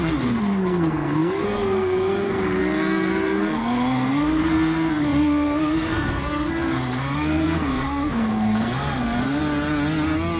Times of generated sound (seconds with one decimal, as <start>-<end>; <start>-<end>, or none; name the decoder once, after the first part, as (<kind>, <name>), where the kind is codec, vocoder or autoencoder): 0.0-9.4 (codec, SNAC)

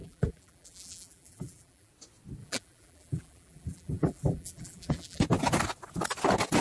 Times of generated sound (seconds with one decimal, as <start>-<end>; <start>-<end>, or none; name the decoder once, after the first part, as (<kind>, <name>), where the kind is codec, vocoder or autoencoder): 0.0-1.9 (vocoder, BigVGAN v2); 2.4-5.2

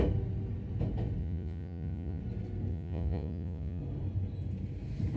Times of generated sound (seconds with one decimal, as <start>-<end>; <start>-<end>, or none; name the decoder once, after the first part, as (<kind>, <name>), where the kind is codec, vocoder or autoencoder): 1.2-2.2 (vocoder, Vocos); 2.7-3.8